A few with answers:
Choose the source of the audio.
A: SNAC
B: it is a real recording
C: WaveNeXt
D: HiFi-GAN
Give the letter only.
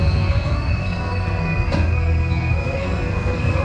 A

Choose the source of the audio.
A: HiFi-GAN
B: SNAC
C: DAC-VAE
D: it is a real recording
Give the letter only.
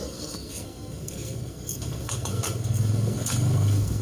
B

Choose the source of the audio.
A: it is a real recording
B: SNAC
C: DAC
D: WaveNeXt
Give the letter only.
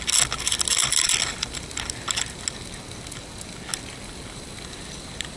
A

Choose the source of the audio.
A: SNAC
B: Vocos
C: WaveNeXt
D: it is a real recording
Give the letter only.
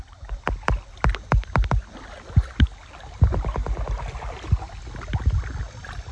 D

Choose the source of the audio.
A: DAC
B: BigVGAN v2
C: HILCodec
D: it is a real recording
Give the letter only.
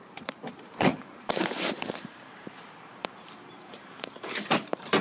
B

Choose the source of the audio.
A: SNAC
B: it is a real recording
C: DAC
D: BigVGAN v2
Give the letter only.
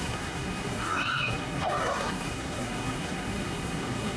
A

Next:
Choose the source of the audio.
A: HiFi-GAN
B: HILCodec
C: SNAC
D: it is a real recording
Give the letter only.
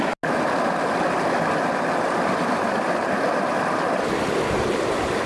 D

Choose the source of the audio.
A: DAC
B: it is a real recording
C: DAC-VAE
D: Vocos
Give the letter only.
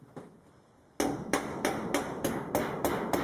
B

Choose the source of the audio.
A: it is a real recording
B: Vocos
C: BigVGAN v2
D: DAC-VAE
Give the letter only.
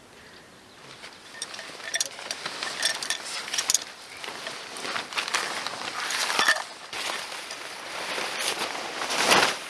C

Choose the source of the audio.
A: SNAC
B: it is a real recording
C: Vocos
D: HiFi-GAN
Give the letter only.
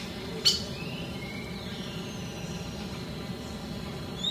B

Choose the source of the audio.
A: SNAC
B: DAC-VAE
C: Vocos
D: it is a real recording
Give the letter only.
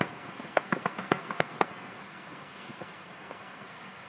A